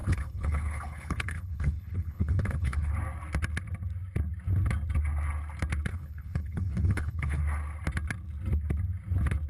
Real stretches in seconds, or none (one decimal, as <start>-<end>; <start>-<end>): 2.9-5.9; 7.4-9.5